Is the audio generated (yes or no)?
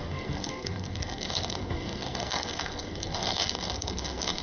yes